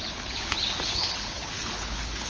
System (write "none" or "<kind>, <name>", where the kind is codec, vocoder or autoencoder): codec, HILCodec